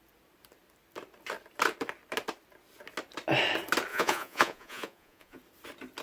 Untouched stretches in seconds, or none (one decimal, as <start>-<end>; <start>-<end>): 0.0-3.9; 5.4-6.0